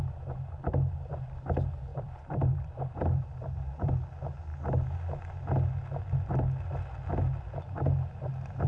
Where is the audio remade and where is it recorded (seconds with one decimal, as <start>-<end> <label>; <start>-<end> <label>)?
0.0-1.9 recorded; 1.9-3.9 remade; 3.9-8.7 recorded